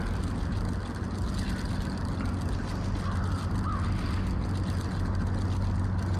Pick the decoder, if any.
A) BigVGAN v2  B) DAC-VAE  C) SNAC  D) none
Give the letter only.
D